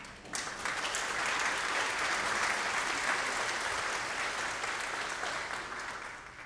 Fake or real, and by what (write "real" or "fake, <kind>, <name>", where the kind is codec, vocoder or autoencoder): real